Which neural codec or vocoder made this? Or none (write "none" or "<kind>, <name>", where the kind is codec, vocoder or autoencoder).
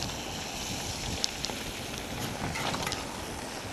none